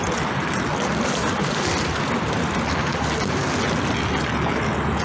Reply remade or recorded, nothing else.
recorded